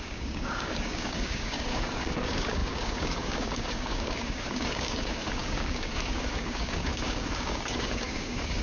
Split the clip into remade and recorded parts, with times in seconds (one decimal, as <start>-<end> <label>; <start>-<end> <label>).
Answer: 0.0-8.6 remade